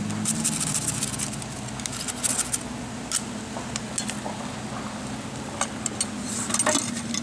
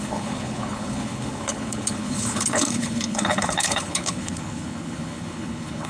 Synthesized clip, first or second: second